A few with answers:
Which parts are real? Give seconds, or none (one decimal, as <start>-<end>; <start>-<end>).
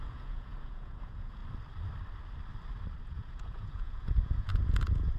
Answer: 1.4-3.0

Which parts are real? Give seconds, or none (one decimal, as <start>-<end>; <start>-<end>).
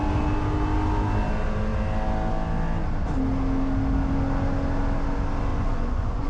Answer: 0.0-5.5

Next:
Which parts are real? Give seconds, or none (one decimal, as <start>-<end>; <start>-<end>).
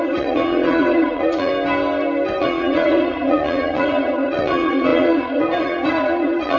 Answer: 1.5-2.4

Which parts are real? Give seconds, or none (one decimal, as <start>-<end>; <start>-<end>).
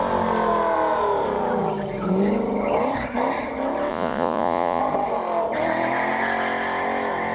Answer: 0.0-3.9; 4.8-7.3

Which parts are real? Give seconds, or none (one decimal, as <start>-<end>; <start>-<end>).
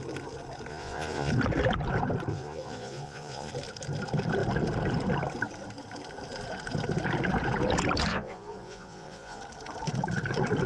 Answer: 0.0-0.7; 1.3-2.3; 3.5-8.1; 9.4-10.7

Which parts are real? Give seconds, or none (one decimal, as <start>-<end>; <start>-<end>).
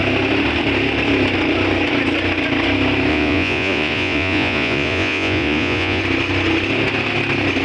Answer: 0.0-3.1; 6.0-7.6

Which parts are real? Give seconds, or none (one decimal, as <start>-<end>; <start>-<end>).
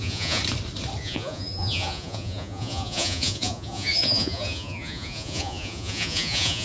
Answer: 0.4-1.0